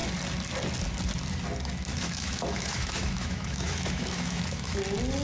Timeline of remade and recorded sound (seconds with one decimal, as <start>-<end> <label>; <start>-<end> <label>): 0.0-1.9 recorded; 1.9-4.8 remade; 4.8-5.2 recorded